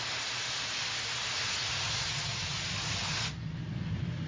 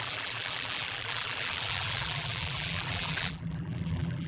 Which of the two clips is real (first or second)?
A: first